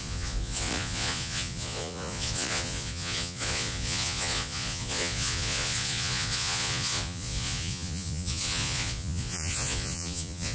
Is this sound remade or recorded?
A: remade